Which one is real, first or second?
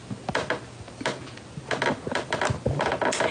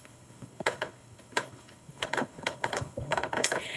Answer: first